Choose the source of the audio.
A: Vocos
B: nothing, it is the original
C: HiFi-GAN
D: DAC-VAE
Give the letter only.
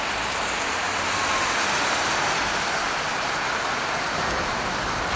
B